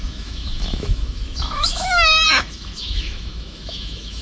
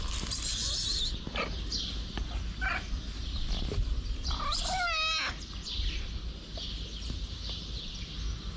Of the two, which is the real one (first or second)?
second